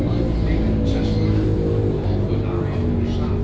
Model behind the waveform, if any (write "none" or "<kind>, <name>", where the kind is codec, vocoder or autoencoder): none